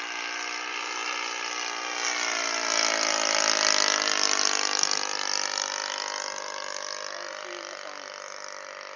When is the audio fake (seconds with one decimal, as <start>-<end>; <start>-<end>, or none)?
none